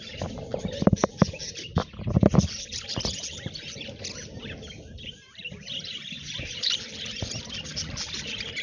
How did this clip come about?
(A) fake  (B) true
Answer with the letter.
B